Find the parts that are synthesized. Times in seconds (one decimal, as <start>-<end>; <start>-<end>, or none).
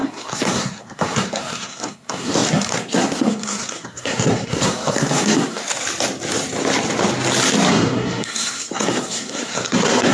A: 0.0-5.6; 7.7-10.1